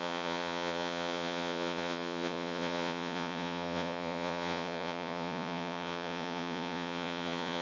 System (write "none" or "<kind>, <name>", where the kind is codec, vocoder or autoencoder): vocoder, Vocos